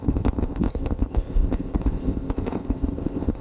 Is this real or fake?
fake